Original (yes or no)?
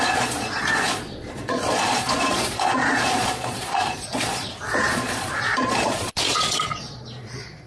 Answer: no